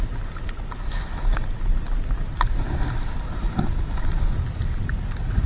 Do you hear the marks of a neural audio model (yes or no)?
no